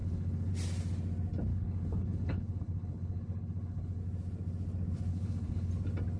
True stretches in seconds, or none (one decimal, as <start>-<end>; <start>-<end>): 0.5-1.5; 4.0-5.1; 5.7-6.2